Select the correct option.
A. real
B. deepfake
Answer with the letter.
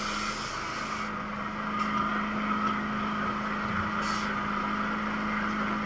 A